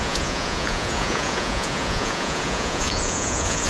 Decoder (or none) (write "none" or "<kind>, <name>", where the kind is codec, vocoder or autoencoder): vocoder, Vocos